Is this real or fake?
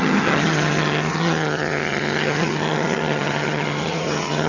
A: fake